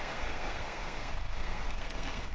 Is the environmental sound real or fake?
fake